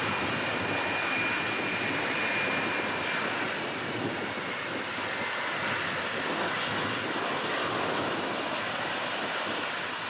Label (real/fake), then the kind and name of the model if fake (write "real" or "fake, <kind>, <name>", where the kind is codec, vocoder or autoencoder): real